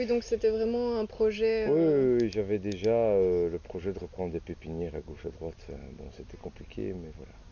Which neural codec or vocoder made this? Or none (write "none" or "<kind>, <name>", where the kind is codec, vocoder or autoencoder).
none